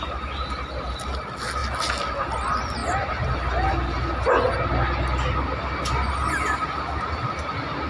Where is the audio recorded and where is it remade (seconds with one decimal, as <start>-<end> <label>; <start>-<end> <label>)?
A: 0.0-7.9 recorded